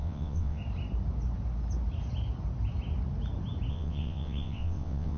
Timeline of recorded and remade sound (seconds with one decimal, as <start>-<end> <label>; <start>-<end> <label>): 0.0-0.6 remade; 0.6-3.7 recorded; 3.7-5.2 remade